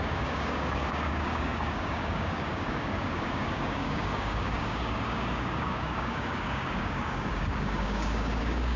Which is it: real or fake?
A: fake